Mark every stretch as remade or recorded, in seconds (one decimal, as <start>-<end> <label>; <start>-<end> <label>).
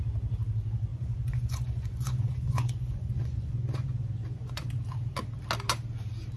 0.0-0.9 recorded; 0.9-4.7 remade; 4.7-6.4 recorded